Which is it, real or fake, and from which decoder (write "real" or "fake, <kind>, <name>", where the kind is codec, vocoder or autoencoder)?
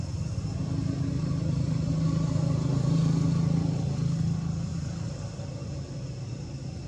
real